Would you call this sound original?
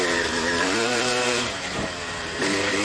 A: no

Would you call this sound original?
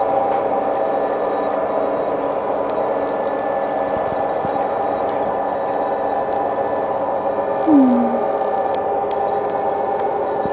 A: yes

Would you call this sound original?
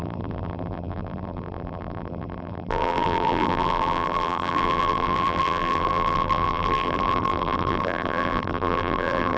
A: no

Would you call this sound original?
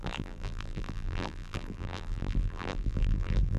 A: no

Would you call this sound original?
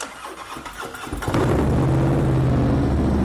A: yes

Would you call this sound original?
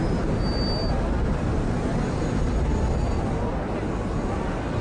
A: yes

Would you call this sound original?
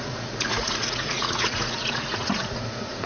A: no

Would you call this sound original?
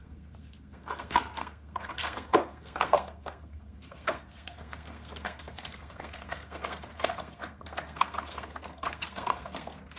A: no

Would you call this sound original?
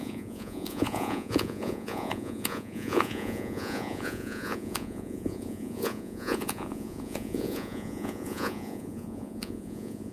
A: no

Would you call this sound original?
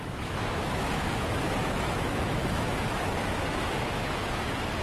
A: no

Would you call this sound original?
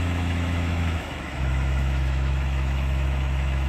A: no